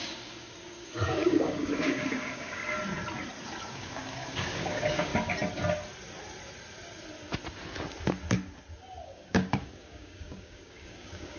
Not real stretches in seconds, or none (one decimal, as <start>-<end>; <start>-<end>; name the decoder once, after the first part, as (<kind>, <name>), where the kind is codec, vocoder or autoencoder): 0.0-2.6 (codec, DAC); 3.7-5.1; 9.0-11.4